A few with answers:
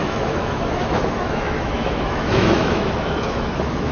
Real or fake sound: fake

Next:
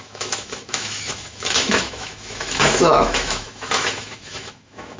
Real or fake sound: fake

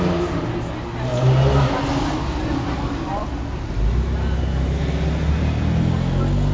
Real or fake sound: real